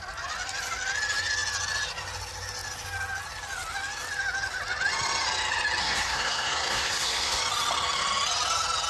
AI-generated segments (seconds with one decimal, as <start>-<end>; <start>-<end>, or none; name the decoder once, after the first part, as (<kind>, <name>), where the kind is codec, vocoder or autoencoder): 5.8-7.4 (codec, SNAC)